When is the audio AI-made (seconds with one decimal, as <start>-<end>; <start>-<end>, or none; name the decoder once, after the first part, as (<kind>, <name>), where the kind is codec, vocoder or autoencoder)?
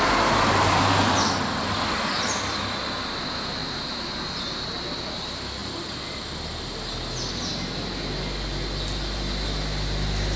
none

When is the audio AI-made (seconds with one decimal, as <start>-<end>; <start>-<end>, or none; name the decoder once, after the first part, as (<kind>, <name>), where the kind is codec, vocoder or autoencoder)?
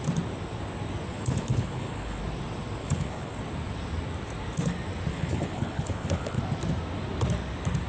1.1-2.2 (codec, HILCodec); 2.8-3.4; 5.1-6.4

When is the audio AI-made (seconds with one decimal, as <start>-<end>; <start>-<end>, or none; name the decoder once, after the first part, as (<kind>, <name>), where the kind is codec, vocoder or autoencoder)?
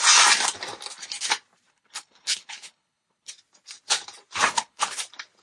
1.7-3.3 (codec, HILCodec); 4.5-5.0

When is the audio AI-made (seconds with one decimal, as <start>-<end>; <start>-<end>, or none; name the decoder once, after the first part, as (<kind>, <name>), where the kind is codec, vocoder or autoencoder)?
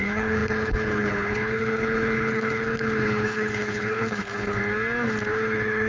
0.0-4.6 (codec, HILCodec); 5.3-5.9